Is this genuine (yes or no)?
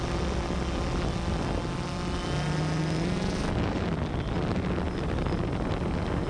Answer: yes